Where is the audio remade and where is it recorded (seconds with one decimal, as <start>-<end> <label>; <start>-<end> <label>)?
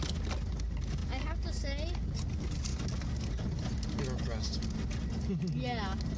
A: 0.0-6.2 recorded